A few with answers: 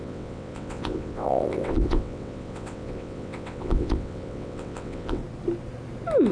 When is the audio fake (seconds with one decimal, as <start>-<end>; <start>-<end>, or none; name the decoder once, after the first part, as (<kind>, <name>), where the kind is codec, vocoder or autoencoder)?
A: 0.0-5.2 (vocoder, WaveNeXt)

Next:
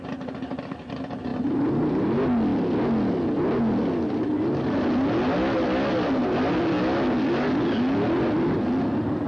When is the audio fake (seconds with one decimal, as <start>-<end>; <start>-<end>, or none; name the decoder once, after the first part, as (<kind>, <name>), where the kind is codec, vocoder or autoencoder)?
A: none

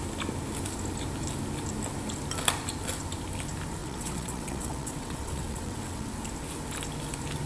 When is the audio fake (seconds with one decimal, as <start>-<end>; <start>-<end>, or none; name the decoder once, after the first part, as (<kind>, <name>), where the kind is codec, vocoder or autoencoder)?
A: 3.8-6.1 (vocoder, WaveNeXt)

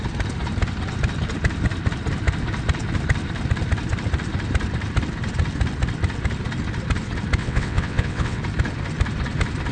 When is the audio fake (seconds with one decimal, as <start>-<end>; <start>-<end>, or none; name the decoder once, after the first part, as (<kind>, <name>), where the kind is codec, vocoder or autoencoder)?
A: 7.4-8.4 (vocoder, WaveNeXt)